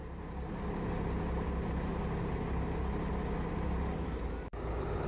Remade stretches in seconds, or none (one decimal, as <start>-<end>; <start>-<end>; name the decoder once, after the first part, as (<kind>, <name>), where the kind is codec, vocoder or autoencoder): none